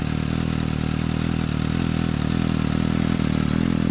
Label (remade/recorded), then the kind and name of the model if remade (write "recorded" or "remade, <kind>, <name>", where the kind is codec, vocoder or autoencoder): recorded